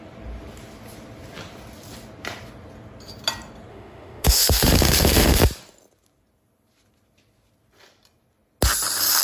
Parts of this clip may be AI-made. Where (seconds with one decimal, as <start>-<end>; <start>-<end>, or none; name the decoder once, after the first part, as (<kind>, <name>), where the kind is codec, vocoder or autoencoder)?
3.7-5.4 (autoencoder, DAC-VAE)